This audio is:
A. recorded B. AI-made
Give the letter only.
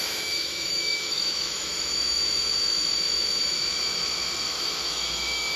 B